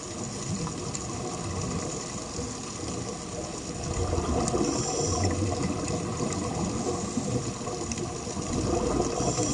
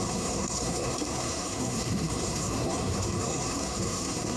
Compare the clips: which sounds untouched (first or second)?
first